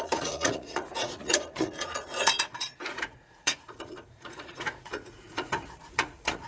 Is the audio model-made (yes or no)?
yes